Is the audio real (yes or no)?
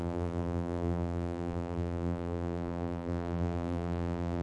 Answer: no